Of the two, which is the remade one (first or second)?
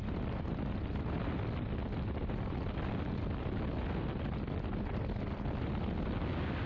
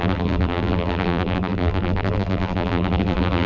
second